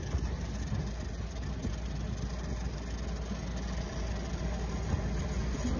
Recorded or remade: recorded